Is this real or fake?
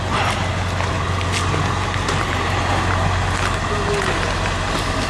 real